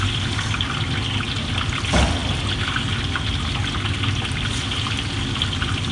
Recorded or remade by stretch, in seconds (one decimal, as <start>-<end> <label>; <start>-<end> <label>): 0.0-5.9 recorded